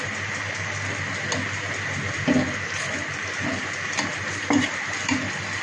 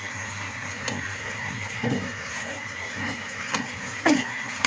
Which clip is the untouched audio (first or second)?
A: first